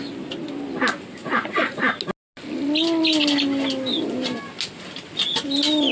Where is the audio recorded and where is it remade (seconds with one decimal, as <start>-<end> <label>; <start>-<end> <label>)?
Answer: 0.0-1.2 recorded; 1.2-1.8 remade; 1.8-5.9 recorded